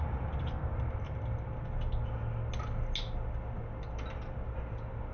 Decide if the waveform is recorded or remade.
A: recorded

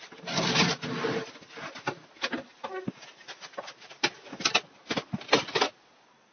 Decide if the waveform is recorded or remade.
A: recorded